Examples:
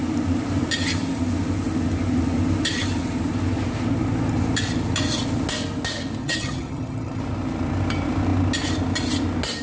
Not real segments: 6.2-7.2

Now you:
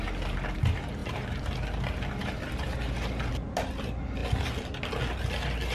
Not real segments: 1.0-1.5; 2.2-3.3

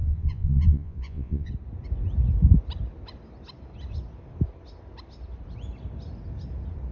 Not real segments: 0.0-1.5

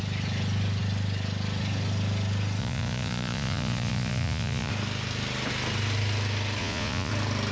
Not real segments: 2.6-4.7; 6.6-7.1